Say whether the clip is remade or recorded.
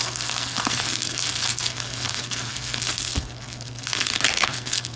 remade